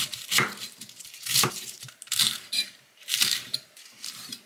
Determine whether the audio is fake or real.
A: fake